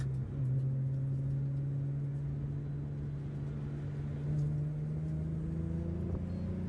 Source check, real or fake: real